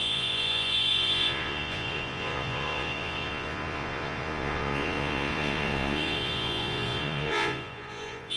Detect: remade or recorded remade